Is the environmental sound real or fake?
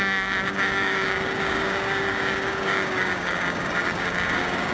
fake